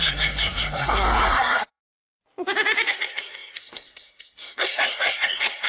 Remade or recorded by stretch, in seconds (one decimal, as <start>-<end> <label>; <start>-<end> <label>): 0.0-1.8 remade; 1.8-2.9 recorded; 2.9-5.7 remade